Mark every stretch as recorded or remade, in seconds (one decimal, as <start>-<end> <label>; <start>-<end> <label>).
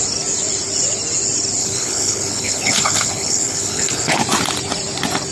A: 0.0-1.6 recorded; 1.6-4.2 remade; 4.2-5.3 recorded